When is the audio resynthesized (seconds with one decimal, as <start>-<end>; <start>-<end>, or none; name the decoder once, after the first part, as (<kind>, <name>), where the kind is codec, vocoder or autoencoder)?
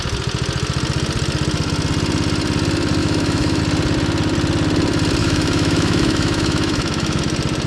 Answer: 3.0-3.6 (autoencoder, DAC-VAE); 5.2-7.2